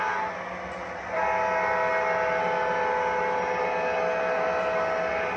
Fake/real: real